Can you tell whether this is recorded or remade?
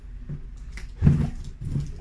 recorded